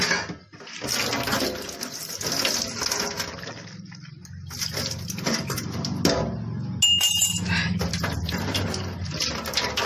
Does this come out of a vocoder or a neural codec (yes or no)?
no